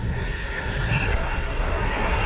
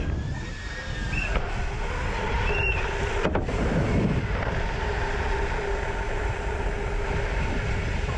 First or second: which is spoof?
first